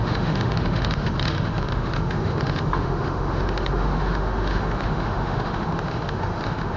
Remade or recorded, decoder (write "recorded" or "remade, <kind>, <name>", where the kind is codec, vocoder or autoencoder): remade, autoencoder, DAC-VAE